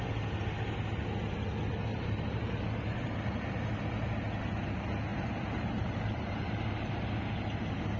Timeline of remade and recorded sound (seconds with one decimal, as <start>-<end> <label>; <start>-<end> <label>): 0.0-1.9 recorded; 1.9-3.8 remade; 3.8-5.1 recorded; 5.1-6.9 remade; 6.9-8.0 recorded